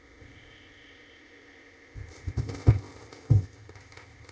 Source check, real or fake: fake